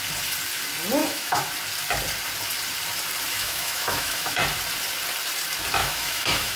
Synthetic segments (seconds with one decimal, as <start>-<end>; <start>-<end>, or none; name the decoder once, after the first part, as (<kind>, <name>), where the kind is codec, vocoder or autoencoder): 1.0-1.5 (autoencoder, DAC-VAE); 3.3-4.4; 5.8-6.6